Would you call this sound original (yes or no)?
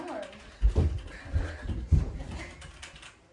yes